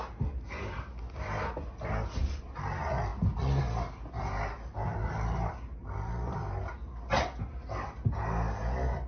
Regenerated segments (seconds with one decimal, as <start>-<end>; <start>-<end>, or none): none